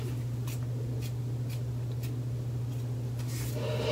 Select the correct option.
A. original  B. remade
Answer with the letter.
A